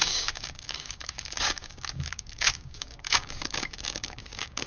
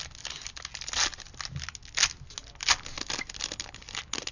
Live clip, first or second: second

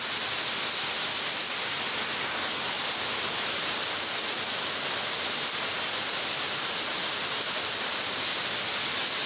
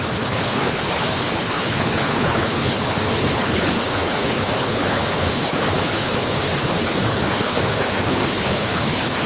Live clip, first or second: first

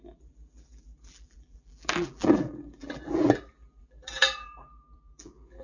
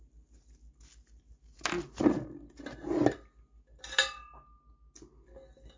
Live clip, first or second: second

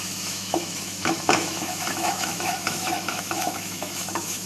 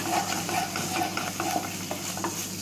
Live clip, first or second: second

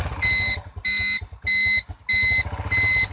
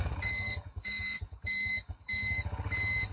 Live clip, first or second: first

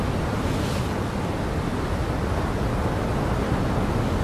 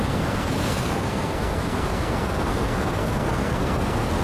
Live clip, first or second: first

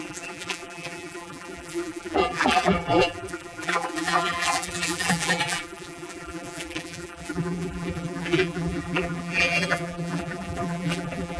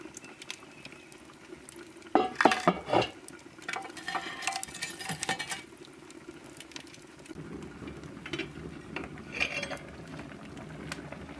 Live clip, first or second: second